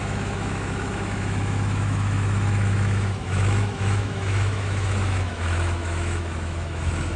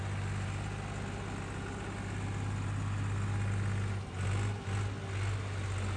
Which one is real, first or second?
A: second